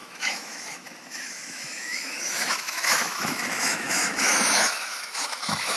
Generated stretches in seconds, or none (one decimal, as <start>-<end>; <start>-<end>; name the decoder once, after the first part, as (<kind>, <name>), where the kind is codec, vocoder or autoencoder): 0.0-5.8 (autoencoder, DAC-VAE)